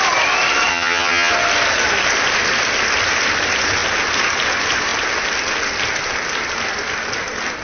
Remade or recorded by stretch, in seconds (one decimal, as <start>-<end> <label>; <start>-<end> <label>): 0.0-0.7 recorded; 0.7-1.3 remade; 1.3-7.6 recorded